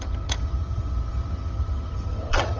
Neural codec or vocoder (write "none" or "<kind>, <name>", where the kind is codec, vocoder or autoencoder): vocoder, HiFi-GAN